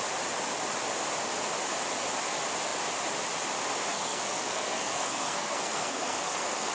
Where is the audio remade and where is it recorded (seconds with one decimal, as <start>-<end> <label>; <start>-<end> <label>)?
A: 0.0-3.9 recorded; 3.9-6.7 remade